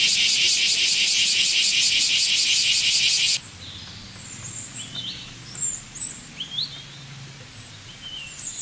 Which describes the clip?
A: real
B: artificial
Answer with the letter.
A